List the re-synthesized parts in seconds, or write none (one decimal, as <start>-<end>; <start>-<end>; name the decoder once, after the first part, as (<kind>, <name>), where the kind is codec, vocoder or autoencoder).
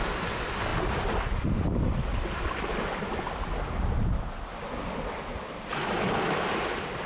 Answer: none